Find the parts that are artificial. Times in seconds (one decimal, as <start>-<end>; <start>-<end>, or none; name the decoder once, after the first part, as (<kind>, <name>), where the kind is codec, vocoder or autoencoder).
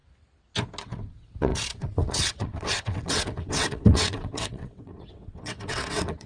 0.8-6.3 (vocoder, WaveNeXt)